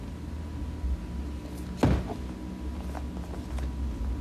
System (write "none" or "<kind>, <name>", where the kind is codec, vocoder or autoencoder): none